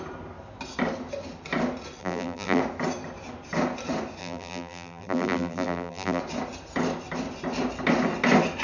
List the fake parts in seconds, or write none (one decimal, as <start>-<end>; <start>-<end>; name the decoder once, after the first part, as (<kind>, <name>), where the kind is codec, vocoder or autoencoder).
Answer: 2.0-2.6 (vocoder, BigVGAN v2); 4.2-6.2